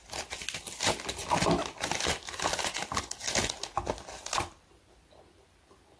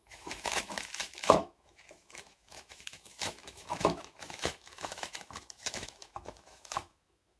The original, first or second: first